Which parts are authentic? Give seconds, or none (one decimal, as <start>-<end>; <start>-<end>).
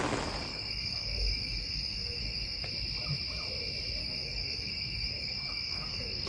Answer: 0.0-0.5; 2.7-4.0